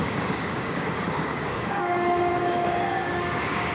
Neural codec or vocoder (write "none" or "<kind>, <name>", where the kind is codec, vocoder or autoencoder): codec, DAC